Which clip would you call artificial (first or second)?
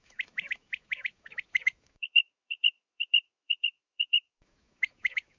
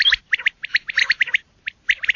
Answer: first